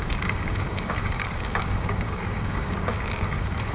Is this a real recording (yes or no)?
no